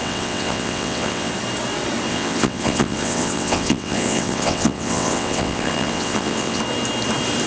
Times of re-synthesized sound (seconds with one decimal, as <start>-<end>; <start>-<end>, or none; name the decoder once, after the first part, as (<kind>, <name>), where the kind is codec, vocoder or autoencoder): 0.0-1.3 (vocoder, WaveNeXt); 2.1-6.6